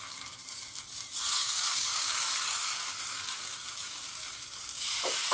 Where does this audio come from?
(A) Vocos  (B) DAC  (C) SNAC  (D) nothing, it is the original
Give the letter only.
B